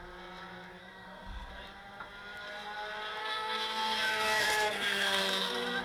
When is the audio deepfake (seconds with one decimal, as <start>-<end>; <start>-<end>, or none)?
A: 0.8-1.5; 3.2-5.8